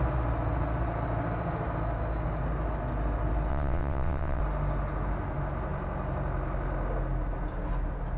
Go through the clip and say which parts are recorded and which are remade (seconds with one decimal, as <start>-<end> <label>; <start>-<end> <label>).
0.0-3.5 recorded; 3.5-4.4 remade; 4.4-8.2 recorded